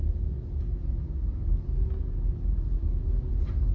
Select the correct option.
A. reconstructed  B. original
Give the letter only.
B